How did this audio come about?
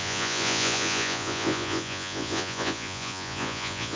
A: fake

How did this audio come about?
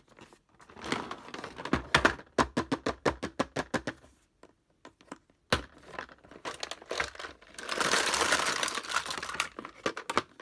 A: real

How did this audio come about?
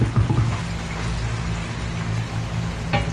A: real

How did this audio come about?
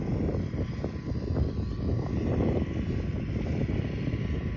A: real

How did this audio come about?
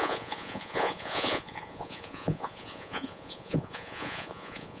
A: fake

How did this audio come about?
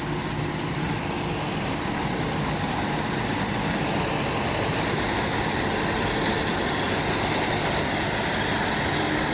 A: real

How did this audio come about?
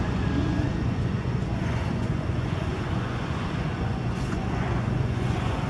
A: fake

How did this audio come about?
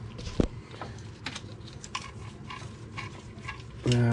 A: real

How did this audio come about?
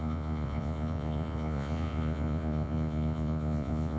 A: fake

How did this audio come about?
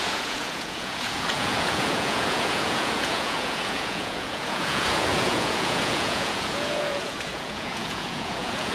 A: fake